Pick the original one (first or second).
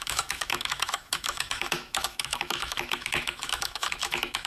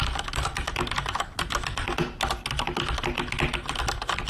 second